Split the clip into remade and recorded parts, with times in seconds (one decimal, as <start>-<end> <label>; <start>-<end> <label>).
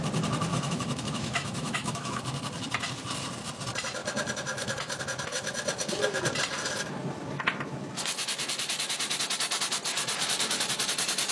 0.0-0.5 recorded; 0.5-2.2 remade; 2.2-11.3 recorded